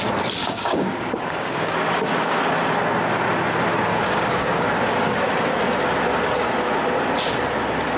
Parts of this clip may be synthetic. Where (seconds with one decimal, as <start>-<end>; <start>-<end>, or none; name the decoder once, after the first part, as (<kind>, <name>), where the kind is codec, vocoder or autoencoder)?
0.4-2.4 (codec, DAC); 3.9-4.7